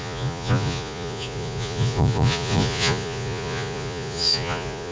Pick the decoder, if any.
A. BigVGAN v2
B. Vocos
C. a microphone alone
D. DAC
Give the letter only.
B